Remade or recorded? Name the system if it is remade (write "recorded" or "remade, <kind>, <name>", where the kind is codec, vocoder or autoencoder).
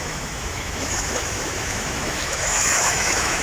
remade, autoencoder, DAC-VAE